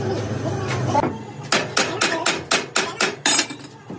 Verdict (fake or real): real